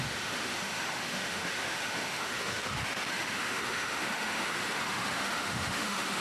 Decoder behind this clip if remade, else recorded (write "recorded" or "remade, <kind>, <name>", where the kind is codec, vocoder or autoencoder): remade, autoencoder, DAC-VAE